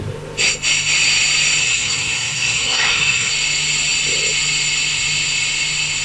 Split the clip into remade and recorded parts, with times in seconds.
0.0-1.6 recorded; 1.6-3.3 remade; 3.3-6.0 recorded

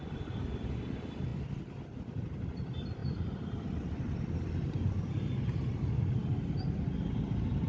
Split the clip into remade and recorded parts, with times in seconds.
0.0-7.7 recorded